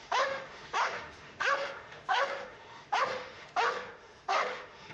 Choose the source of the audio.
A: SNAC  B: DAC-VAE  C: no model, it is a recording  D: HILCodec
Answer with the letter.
B